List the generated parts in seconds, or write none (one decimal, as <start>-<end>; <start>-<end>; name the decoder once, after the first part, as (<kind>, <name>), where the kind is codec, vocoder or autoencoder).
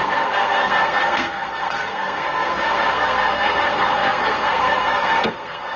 0.0-5.8 (codec, SNAC)